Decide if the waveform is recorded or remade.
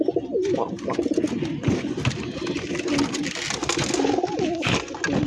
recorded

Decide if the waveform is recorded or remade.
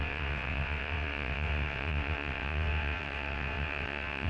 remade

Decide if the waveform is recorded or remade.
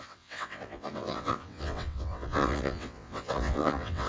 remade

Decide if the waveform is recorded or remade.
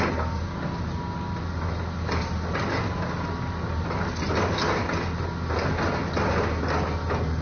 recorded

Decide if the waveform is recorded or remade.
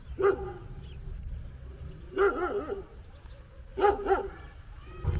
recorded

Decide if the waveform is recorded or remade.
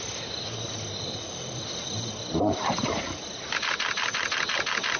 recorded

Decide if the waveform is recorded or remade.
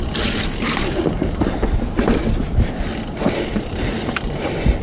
remade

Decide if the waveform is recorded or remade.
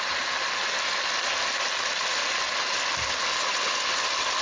recorded